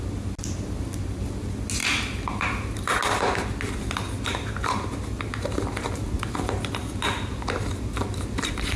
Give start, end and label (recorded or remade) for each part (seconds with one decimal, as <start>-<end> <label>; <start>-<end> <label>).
0.0-8.8 recorded